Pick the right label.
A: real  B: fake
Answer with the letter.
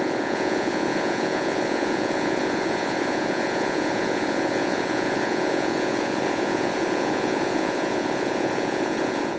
B